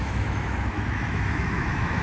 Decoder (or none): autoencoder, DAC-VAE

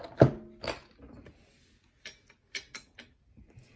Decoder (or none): none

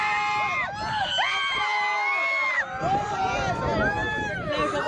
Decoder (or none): none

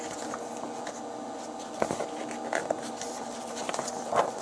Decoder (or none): none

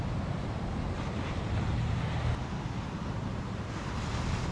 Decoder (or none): none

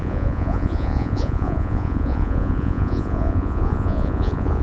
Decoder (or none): vocoder, Vocos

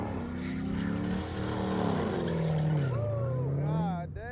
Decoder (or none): none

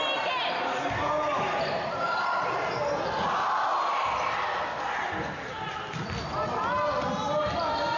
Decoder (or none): none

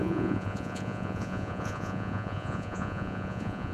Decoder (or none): vocoder, Vocos